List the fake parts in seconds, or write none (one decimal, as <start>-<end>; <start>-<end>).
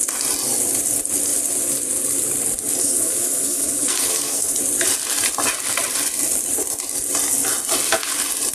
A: 2.8-4.6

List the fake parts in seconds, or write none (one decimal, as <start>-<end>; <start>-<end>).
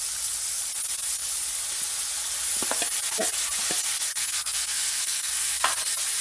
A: 4.1-5.7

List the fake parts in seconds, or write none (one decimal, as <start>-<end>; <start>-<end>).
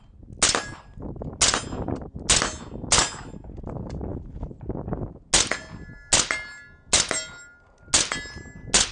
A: none